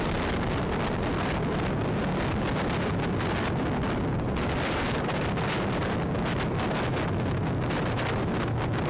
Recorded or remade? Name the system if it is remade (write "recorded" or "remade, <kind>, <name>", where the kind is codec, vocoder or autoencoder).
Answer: recorded